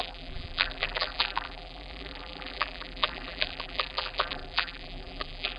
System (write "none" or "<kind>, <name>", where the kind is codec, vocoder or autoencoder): vocoder, BigVGAN v2